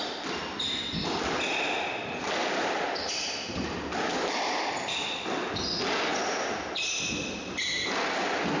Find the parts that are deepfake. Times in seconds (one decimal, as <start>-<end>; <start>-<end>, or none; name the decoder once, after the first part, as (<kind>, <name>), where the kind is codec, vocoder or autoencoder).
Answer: none